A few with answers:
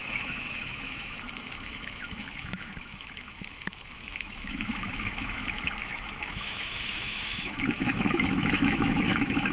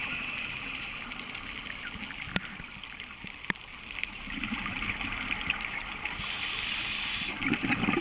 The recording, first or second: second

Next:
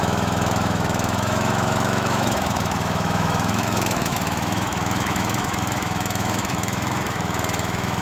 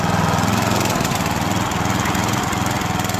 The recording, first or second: second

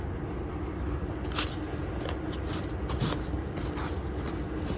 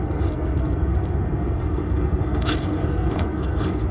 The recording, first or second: first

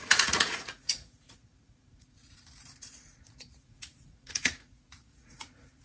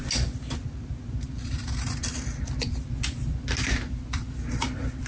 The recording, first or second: second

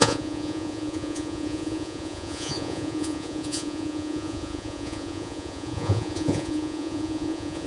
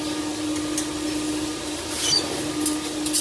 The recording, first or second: second